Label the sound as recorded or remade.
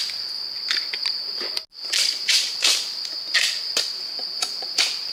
recorded